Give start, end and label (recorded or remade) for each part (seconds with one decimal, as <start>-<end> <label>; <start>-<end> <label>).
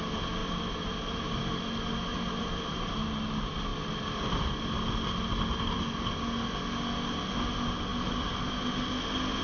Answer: 0.0-0.4 recorded; 0.4-1.3 remade; 1.3-2.1 recorded; 2.1-2.9 remade; 2.9-9.4 recorded